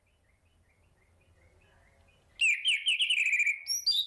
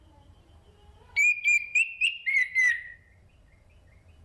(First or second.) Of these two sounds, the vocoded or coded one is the second